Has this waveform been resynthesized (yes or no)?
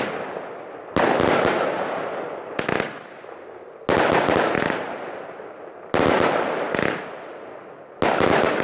no